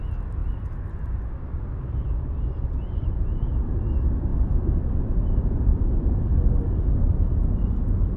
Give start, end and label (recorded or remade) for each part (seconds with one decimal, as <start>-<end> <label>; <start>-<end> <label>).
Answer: 0.0-0.4 recorded; 0.4-1.0 remade; 1.0-4.3 recorded; 4.3-6.3 remade; 6.3-8.2 recorded